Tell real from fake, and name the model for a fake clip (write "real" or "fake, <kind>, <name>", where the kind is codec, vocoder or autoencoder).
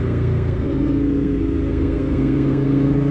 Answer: fake, codec, SNAC